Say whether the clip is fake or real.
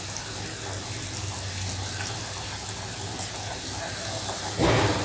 real